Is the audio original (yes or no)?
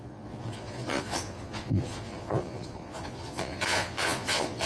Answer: no